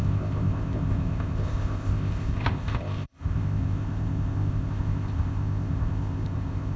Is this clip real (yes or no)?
no